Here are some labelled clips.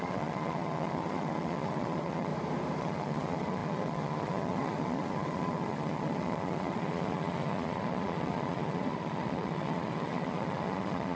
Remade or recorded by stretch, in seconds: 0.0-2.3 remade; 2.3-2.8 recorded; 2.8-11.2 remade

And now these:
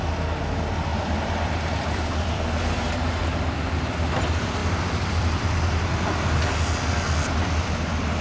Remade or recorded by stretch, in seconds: 0.0-0.9 recorded; 0.9-2.8 remade; 2.8-4.6 recorded; 4.6-5.4 remade; 5.4-8.2 recorded

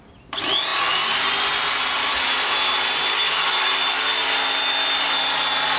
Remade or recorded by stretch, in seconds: 0.0-5.8 recorded